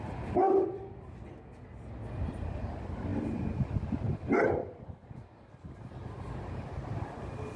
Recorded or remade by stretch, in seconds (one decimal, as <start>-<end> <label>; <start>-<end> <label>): 0.0-7.6 recorded